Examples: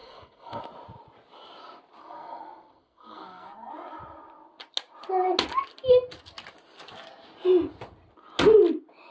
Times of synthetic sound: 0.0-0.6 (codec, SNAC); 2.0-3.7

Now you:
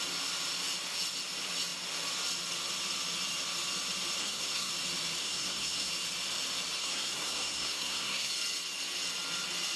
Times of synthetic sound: 4.2-4.7 (codec, SNAC); 5.2-5.9; 6.8-8.3